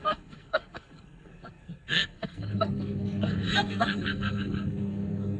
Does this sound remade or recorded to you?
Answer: remade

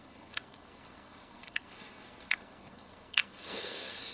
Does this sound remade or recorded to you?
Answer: remade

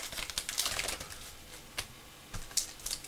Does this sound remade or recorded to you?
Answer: recorded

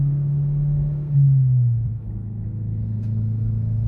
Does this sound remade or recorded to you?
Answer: remade